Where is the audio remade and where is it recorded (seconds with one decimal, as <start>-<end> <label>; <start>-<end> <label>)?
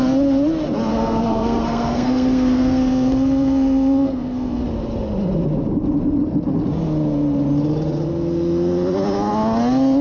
0.0-0.9 recorded; 0.9-4.6 remade; 4.6-10.0 recorded